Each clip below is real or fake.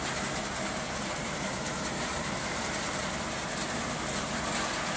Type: real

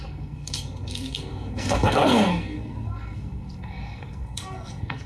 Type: fake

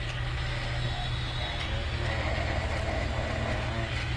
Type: real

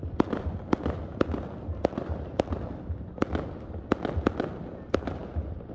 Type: real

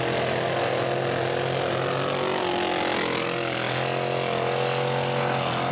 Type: real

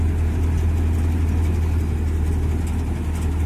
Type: real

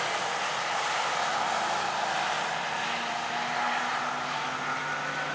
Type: real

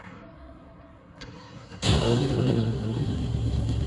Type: fake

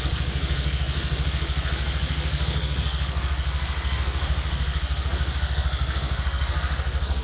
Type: fake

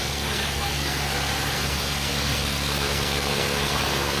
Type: fake